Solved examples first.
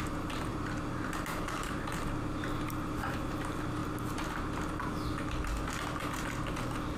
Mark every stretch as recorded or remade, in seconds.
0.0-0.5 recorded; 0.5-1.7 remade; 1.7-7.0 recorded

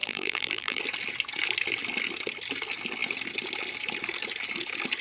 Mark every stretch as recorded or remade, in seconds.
0.0-0.8 remade; 0.8-5.0 recorded

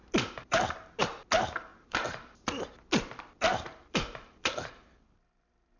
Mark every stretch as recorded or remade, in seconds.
0.0-1.0 remade; 1.0-1.7 recorded; 1.7-2.7 remade; 2.7-3.5 recorded; 3.5-5.8 remade

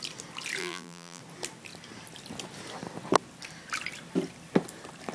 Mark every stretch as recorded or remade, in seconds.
0.0-0.6 recorded; 0.6-1.2 remade; 1.2-5.1 recorded

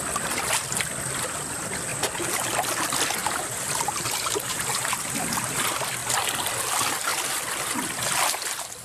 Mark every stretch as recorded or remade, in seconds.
0.0-3.2 recorded; 3.2-5.6 remade; 5.6-8.8 recorded